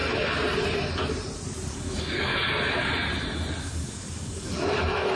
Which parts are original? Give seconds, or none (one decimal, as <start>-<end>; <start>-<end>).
0.0-1.7; 2.3-3.6; 4.5-5.2